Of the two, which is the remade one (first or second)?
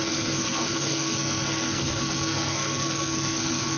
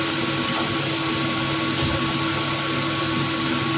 first